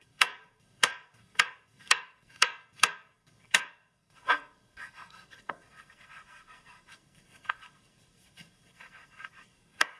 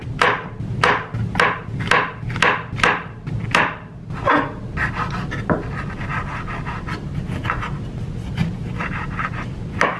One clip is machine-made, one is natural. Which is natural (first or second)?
second